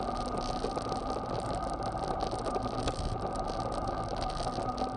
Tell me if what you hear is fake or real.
real